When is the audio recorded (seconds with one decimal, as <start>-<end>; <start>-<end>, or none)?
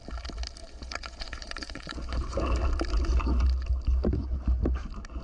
0.0-0.6; 2.4-5.2